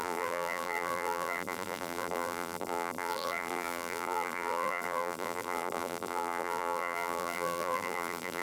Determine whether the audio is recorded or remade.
remade